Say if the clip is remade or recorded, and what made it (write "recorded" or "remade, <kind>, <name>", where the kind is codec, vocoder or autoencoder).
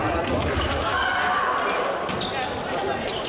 recorded